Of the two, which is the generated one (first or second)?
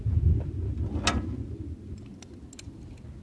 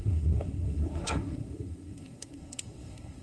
second